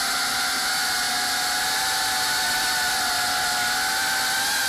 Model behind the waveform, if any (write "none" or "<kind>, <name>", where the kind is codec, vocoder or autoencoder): none